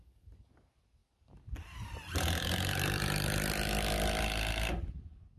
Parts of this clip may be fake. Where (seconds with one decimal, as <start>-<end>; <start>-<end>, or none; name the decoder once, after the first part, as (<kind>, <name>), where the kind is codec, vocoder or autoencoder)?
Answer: none